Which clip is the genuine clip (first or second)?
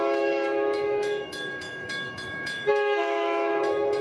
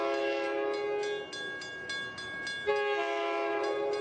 second